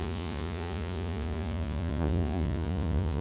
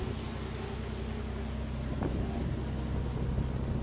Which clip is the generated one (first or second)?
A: first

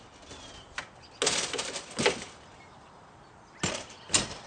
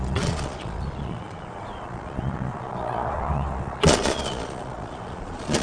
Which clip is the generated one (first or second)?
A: second